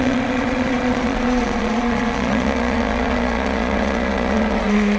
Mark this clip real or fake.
fake